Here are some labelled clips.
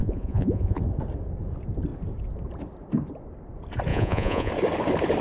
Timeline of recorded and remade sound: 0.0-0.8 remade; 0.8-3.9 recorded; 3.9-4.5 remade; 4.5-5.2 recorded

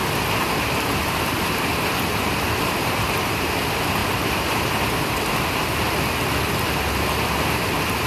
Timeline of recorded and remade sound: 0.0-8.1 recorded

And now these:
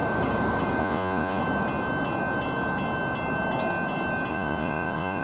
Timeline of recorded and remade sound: 0.0-0.8 recorded; 0.8-1.4 remade; 1.4-4.3 recorded; 4.3-5.2 remade